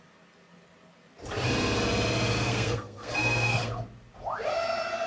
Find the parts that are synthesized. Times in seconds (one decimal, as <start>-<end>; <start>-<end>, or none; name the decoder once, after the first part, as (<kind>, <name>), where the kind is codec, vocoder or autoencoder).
2.5-3.7 (codec, SNAC)